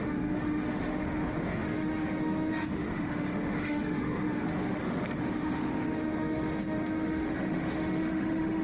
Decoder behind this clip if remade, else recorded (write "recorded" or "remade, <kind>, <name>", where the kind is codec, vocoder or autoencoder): remade, autoencoder, DAC-VAE